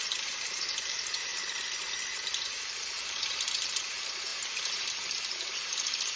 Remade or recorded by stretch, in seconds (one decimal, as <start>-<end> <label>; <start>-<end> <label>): 0.0-1.3 remade; 1.3-2.2 recorded; 2.2-6.2 remade